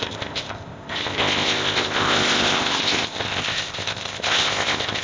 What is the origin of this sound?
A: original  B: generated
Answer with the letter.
B